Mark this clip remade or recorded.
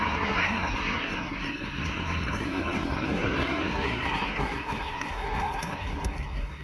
remade